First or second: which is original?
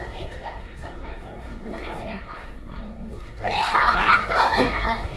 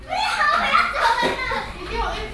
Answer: second